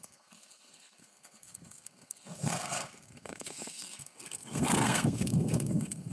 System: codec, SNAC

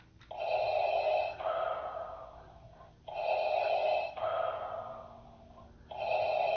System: none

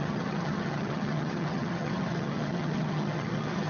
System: vocoder, HiFi-GAN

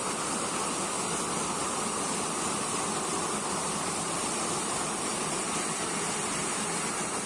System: none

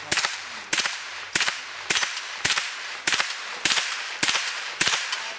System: vocoder, BigVGAN v2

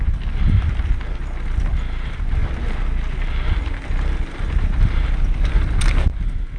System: none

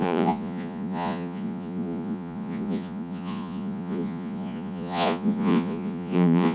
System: vocoder, Vocos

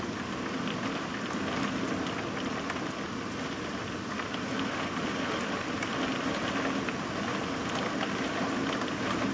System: none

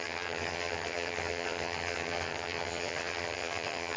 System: vocoder, HiFi-GAN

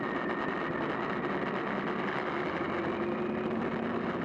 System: none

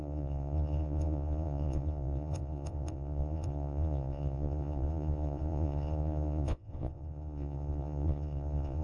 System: vocoder, Vocos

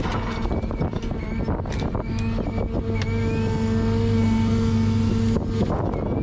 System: none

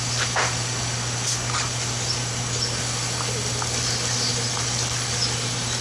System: none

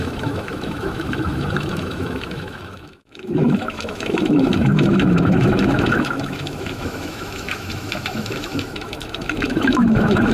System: autoencoder, DAC-VAE